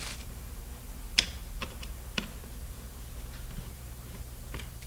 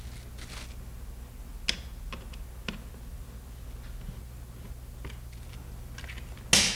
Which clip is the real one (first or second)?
second